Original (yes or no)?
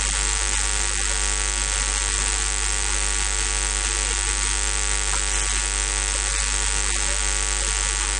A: yes